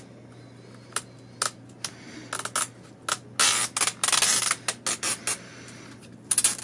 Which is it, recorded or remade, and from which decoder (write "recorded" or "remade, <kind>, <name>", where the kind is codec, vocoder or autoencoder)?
recorded